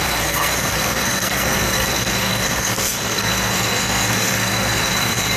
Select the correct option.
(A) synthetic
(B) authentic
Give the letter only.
A